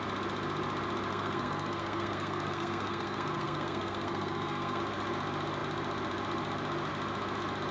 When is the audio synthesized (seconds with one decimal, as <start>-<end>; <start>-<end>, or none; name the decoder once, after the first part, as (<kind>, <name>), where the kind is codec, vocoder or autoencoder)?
1.1-4.8 (codec, SNAC)